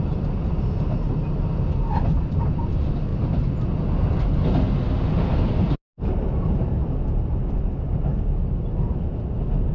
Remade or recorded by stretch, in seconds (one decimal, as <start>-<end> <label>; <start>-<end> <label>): 0.0-9.7 recorded